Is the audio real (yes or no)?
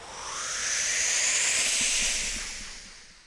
yes